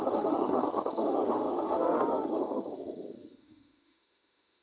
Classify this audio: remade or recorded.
remade